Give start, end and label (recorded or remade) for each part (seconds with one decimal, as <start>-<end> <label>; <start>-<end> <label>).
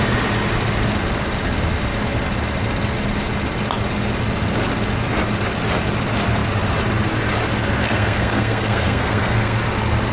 0.0-7.8 recorded; 7.8-9.6 remade; 9.6-10.1 recorded